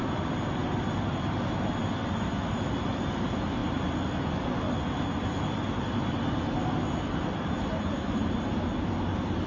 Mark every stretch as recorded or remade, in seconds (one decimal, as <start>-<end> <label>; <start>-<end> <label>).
0.0-9.5 recorded